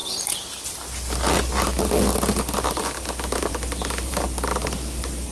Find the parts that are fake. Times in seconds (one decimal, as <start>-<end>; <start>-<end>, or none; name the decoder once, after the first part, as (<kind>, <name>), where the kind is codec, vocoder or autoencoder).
none